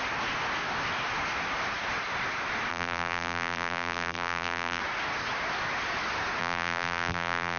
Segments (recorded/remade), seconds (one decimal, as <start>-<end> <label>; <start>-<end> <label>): 0.0-2.7 recorded; 2.7-4.8 remade; 4.8-6.4 recorded; 6.4-7.6 remade